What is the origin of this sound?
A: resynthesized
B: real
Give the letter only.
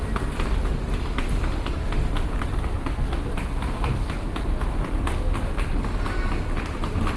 B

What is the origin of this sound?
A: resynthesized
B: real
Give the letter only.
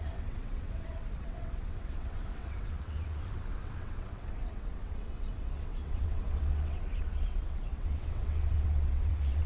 A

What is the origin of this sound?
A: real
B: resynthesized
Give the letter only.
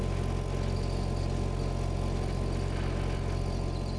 A